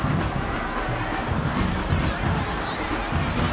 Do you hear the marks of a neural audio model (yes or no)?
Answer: no